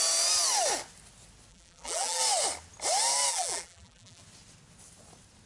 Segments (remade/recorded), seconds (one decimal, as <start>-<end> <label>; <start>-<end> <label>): 0.0-1.5 recorded; 1.5-2.2 remade; 2.2-3.3 recorded; 3.3-4.2 remade; 4.2-5.5 recorded